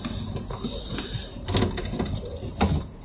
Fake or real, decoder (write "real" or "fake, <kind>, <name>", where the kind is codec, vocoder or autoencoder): real